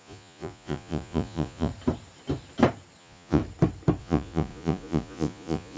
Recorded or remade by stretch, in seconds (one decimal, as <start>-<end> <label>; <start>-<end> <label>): 0.0-1.7 remade; 1.7-3.0 recorded; 3.0-3.4 remade; 3.4-4.0 recorded; 4.0-5.8 remade